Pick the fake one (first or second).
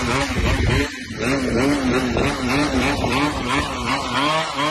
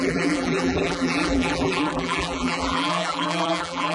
second